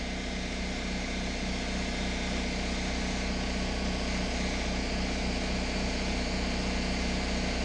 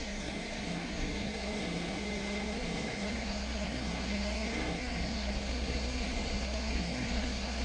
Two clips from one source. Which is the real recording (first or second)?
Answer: first